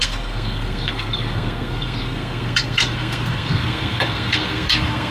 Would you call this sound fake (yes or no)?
yes